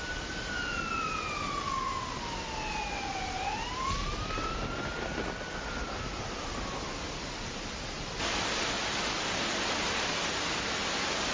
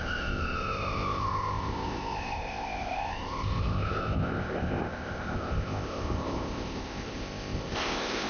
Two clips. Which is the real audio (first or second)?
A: first